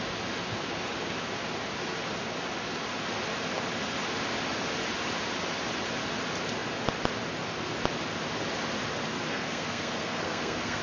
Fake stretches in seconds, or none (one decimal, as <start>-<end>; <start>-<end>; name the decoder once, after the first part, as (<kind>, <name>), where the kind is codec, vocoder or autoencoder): 9.3-10.8 (codec, SNAC)